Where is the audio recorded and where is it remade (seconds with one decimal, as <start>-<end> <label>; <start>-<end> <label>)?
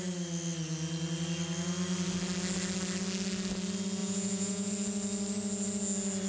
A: 0.0-4.0 recorded; 4.0-4.7 remade; 4.7-6.3 recorded